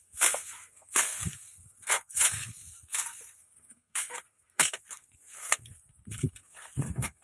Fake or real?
fake